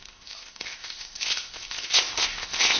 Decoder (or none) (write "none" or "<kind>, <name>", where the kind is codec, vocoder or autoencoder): codec, ZipCodec